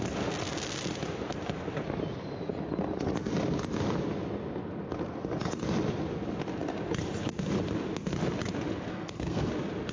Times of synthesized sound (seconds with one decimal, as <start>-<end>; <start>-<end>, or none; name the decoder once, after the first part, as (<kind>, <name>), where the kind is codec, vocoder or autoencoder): 8.9-9.5 (codec, SNAC)